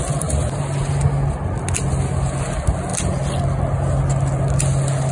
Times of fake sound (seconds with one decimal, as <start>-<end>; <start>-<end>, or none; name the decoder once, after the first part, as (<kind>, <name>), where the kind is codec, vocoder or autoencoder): none